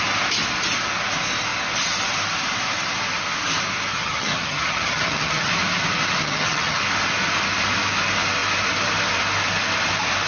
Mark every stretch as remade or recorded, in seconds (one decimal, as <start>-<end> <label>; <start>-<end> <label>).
0.0-3.9 recorded; 3.9-5.5 remade; 5.5-6.2 recorded; 6.2-6.8 remade; 6.8-10.3 recorded